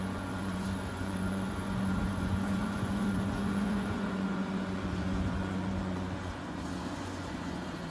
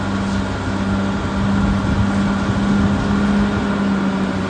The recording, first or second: second